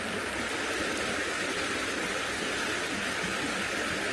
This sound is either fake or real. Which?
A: real